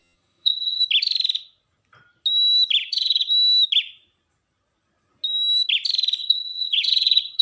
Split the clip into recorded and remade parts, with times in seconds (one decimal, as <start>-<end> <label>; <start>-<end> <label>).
0.0-0.8 remade; 0.8-2.8 recorded; 2.8-3.3 remade; 3.3-6.2 recorded; 6.2-7.4 remade